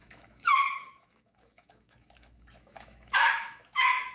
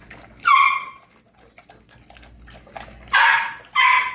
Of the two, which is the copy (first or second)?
first